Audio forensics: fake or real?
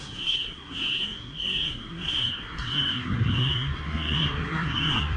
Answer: fake